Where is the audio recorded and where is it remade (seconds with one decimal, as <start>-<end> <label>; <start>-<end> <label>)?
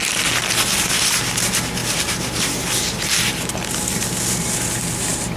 0.0-5.4 recorded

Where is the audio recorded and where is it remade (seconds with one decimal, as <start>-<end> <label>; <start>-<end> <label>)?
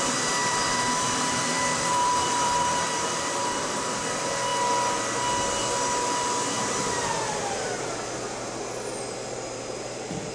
0.0-0.4 recorded; 0.4-3.4 remade; 3.4-10.3 recorded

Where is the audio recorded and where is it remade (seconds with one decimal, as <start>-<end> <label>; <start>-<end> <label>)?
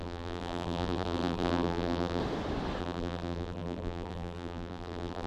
0.0-2.2 remade; 2.2-2.8 recorded; 2.8-5.3 remade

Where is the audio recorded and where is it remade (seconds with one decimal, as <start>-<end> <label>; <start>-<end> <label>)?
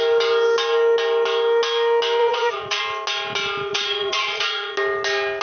0.0-2.2 recorded; 2.2-2.8 remade; 2.8-3.7 recorded; 3.7-4.7 remade; 4.7-5.4 recorded